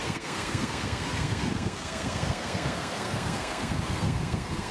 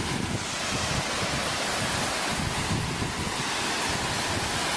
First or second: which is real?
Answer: second